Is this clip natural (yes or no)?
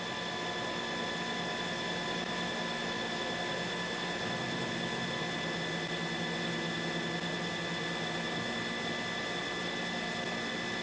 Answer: yes